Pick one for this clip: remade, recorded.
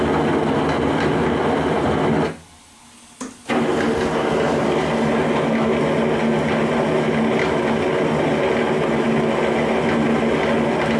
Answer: recorded